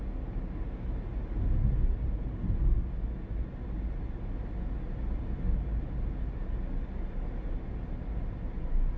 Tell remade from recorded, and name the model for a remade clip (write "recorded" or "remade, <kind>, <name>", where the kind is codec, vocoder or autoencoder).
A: recorded